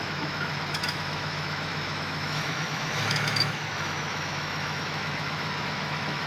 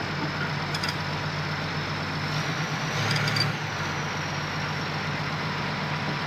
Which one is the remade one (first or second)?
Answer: first